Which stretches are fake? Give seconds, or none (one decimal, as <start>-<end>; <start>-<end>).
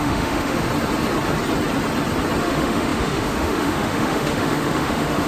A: 0.0-0.7; 2.4-5.3